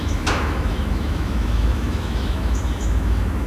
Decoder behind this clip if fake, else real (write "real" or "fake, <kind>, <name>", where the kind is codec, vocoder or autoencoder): fake, autoencoder, DAC-VAE